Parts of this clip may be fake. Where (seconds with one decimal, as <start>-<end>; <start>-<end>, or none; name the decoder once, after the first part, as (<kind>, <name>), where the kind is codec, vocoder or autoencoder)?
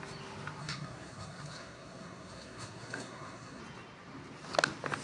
0.6-3.6 (codec, SNAC)